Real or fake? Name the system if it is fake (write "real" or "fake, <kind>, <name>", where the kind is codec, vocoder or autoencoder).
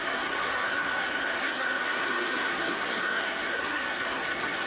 fake, codec, SNAC